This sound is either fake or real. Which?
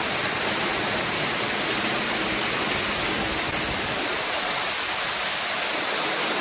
real